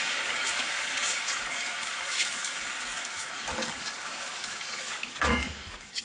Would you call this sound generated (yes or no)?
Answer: yes